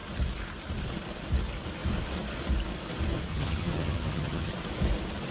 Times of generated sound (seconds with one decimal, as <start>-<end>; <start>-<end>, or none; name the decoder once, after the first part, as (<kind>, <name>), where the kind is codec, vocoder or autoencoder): 3.3-4.5 (vocoder, HiFi-GAN)